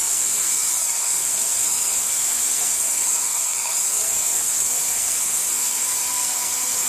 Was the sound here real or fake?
fake